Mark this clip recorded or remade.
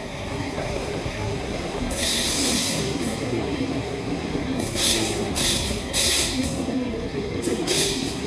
remade